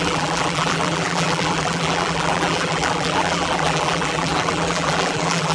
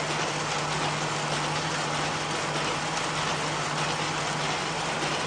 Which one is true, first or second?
second